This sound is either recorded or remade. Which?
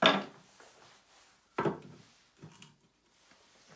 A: recorded